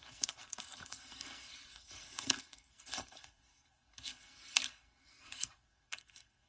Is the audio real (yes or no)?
no